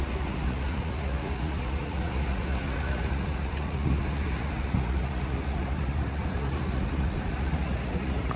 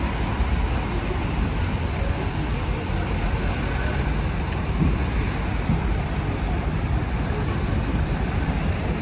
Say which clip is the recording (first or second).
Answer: second